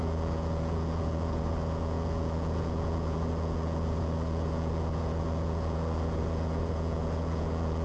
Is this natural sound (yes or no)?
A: no